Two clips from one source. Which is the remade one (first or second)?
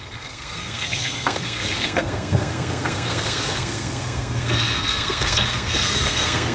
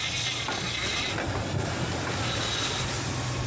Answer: first